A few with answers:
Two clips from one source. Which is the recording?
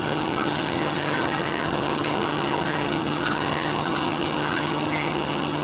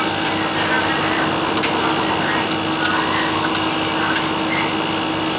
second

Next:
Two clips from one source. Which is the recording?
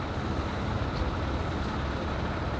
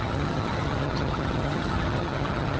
first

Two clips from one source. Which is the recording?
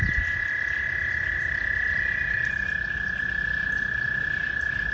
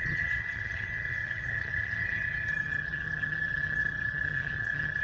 first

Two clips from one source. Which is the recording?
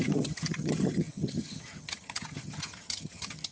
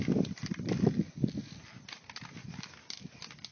second